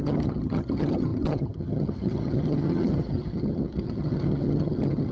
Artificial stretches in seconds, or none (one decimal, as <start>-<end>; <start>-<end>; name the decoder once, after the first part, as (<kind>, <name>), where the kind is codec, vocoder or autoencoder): 0.0-5.1 (vocoder, HiFi-GAN)